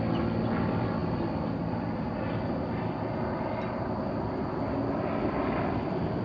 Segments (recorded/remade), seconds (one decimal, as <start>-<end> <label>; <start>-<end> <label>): 0.0-6.2 recorded